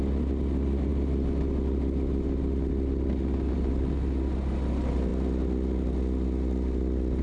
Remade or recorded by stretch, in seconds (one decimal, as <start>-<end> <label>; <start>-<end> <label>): 0.0-7.2 recorded